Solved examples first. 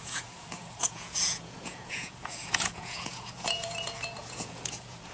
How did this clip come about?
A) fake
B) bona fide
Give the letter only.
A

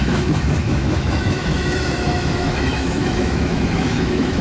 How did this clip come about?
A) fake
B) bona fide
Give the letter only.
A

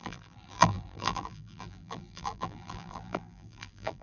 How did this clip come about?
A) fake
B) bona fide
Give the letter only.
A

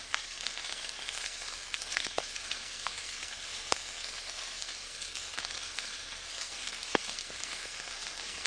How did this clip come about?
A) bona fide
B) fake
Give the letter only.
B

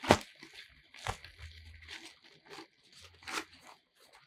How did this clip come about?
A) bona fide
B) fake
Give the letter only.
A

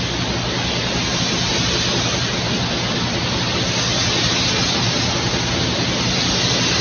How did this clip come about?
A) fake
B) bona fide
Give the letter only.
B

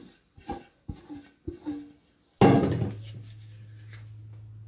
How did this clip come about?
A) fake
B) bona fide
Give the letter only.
B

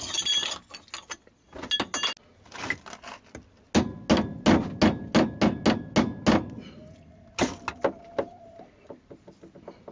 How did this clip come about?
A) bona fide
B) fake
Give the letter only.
A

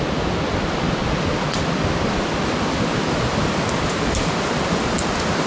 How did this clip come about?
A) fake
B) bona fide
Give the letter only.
B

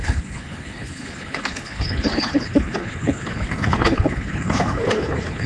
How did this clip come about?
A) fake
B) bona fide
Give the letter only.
A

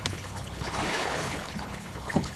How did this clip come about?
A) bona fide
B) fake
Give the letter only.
B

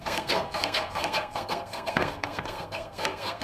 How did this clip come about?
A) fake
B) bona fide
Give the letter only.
A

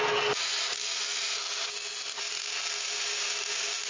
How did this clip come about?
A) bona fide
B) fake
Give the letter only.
A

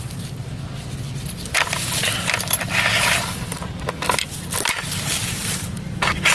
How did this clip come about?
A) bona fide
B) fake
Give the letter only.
A